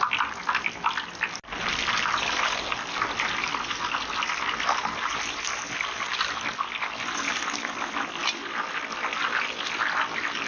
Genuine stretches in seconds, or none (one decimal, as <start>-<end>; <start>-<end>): 0.0-10.5